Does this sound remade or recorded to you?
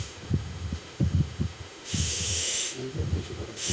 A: remade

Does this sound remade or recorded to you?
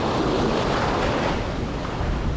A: recorded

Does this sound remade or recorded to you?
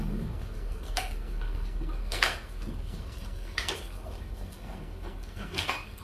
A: remade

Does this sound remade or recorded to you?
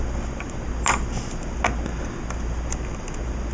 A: recorded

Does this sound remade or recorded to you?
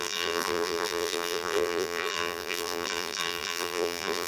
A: remade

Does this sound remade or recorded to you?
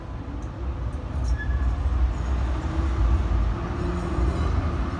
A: recorded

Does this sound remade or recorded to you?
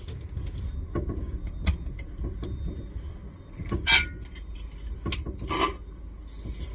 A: recorded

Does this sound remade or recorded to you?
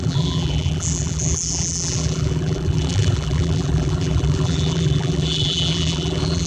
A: remade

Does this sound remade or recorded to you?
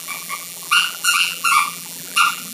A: remade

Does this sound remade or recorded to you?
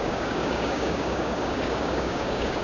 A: remade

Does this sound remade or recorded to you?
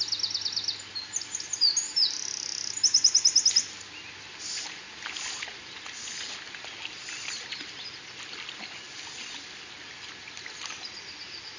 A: recorded